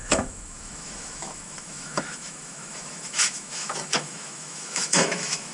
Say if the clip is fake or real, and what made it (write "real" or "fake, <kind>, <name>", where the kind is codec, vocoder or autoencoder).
fake, autoencoder, DAC-VAE